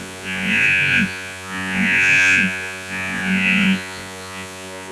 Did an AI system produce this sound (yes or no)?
yes